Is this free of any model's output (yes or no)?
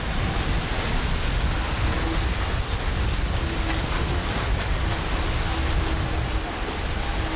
yes